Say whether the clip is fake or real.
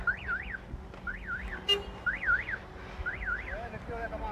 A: real